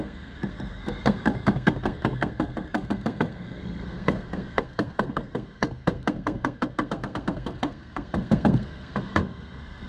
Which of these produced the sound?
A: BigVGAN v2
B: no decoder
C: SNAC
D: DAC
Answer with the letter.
C